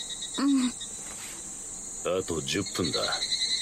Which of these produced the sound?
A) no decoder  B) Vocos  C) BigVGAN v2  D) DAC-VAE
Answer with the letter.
A